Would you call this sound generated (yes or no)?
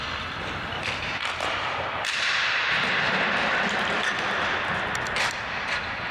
yes